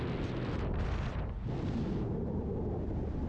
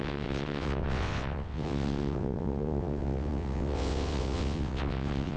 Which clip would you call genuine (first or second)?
first